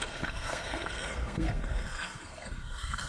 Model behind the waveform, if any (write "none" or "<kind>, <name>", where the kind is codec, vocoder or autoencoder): codec, SNAC